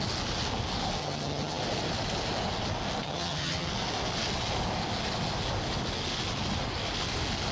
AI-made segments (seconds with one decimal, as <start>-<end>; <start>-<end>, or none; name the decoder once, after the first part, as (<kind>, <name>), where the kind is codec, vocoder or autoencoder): 1.0-1.6 (vocoder, HiFi-GAN); 3.0-3.7